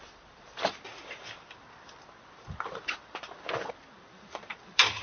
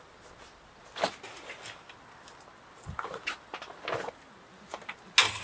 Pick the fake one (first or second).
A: first